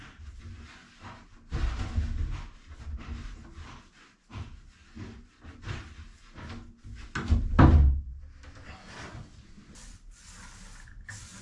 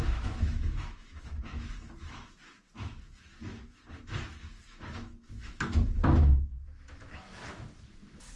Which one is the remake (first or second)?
second